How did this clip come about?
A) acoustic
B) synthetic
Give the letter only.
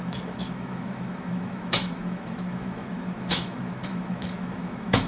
B